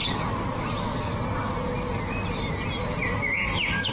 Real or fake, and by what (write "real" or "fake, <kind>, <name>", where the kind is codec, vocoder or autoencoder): real